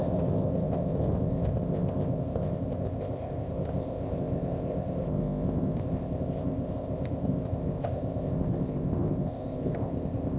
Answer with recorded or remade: remade